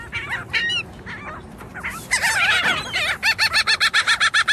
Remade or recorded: recorded